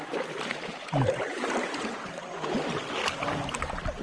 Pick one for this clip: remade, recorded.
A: remade